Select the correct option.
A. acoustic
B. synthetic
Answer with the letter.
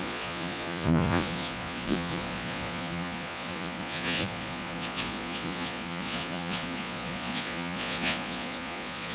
B